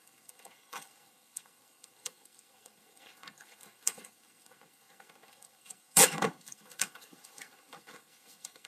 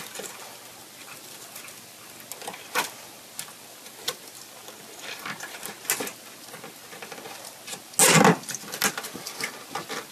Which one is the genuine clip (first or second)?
second